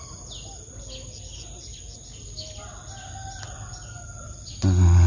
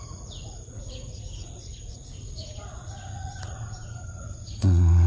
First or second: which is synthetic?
second